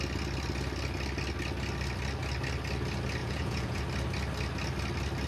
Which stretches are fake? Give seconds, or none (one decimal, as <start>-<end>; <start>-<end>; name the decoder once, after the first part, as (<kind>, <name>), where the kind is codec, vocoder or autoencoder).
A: 3.2-3.8 (vocoder, Vocos)